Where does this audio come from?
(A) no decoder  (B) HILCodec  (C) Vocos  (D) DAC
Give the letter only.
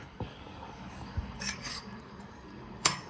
D